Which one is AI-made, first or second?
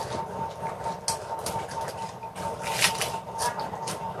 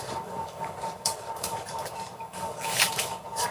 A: second